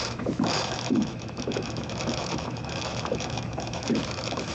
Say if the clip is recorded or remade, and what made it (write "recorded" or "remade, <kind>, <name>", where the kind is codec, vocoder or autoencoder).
remade, autoencoder, DAC-VAE